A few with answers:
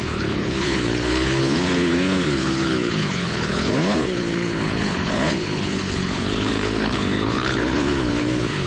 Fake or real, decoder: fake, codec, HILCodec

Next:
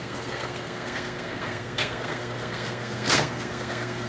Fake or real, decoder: fake, codec, SNAC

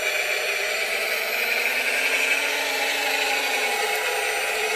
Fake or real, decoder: real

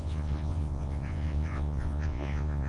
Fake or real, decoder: fake, vocoder, Vocos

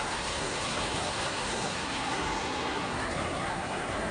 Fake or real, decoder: fake, codec, SNAC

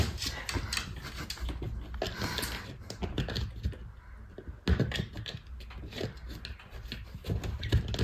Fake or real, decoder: real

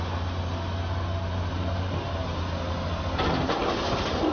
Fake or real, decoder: real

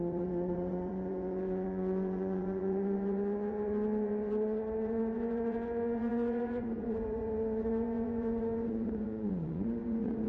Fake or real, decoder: fake, vocoder, Vocos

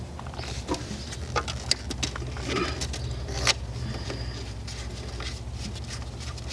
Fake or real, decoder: real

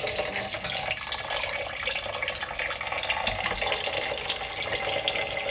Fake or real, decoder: real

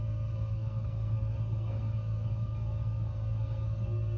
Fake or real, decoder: fake, codec, SNAC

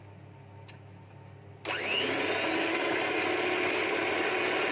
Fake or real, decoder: real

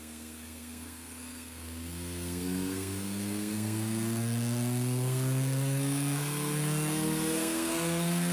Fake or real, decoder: fake, codec, SNAC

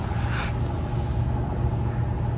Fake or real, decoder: real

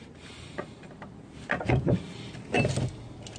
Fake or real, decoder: real